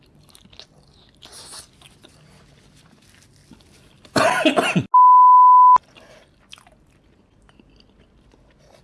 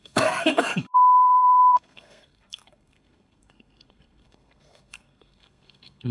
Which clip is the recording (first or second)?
first